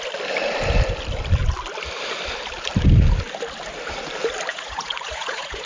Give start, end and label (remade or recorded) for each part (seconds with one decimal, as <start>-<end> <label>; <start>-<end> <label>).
0.0-4.5 recorded; 4.5-5.7 remade